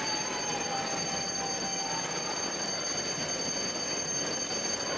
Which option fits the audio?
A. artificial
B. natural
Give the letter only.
B